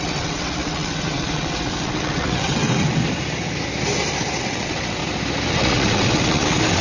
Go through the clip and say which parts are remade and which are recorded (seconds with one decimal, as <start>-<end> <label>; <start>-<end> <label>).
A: 0.0-3.0 remade; 3.0-4.4 recorded; 4.4-5.0 remade; 5.0-5.5 recorded; 5.5-6.8 remade